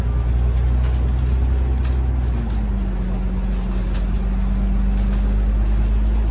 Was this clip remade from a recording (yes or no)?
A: no